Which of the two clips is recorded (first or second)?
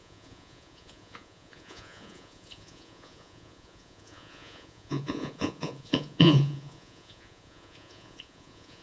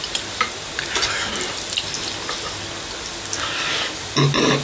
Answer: second